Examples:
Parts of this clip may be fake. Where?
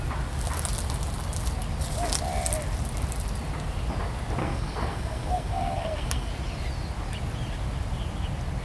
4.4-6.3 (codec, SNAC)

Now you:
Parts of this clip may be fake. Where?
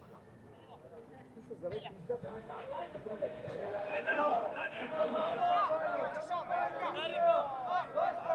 2.0-5.4 (autoencoder, DAC-VAE)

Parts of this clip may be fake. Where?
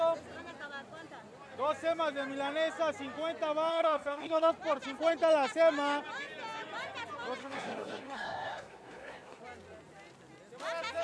3.7-4.5 (codec, SNAC); 7.4-9.4